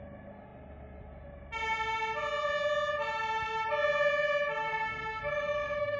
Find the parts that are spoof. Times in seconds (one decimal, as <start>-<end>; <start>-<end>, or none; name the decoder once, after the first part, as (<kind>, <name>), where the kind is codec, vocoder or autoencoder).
4.9-6.0 (codec, DAC)